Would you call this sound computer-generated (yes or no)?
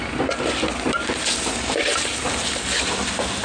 no